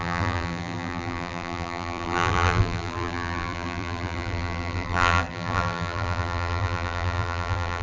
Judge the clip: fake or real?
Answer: fake